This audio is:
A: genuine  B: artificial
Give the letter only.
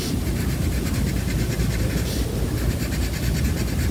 A